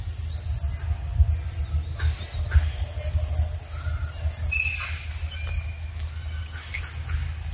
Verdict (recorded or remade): recorded